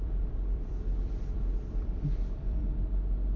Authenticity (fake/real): fake